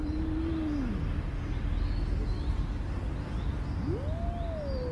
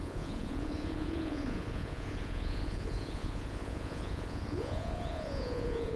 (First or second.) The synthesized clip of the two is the second